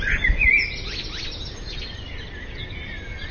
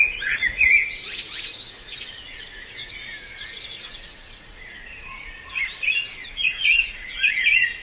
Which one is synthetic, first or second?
second